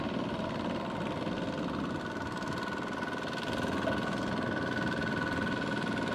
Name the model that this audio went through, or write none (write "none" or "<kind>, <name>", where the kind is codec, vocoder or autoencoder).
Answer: vocoder, BigVGAN v2